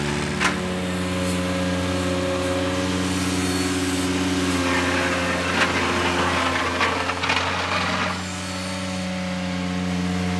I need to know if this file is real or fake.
real